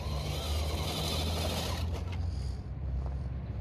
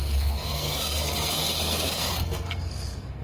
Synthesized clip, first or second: second